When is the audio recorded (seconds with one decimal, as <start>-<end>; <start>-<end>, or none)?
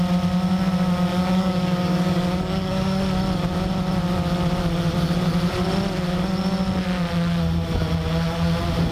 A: 0.0-1.1; 3.0-8.9